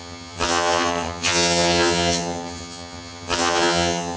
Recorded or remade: remade